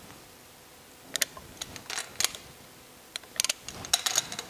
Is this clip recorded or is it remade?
recorded